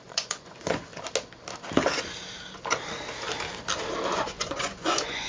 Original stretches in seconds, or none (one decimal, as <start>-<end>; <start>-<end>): 0.9-4.1

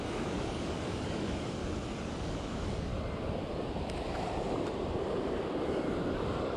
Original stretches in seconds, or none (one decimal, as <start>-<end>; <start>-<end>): 1.6-2.1; 2.9-6.1

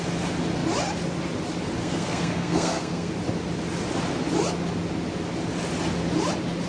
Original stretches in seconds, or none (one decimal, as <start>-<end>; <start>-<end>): 0.0-1.8; 3.1-6.7

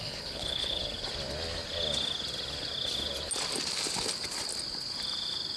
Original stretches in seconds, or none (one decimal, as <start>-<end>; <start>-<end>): 0.8-5.6

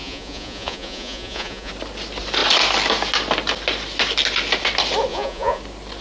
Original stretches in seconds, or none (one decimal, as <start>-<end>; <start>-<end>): 1.7-5.1; 5.6-6.0

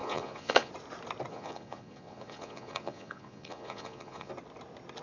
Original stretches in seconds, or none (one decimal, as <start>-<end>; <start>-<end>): 0.7-1.3; 4.3-5.0